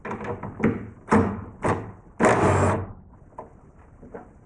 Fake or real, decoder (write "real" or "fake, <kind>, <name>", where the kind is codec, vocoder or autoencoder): real